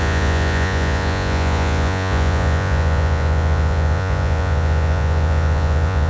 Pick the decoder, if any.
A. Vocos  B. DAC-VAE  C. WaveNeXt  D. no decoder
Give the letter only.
A